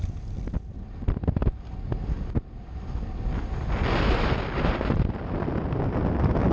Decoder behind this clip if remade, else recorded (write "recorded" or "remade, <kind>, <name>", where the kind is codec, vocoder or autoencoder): recorded